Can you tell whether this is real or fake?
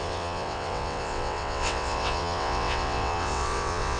fake